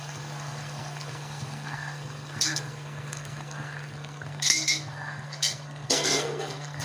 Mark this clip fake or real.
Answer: fake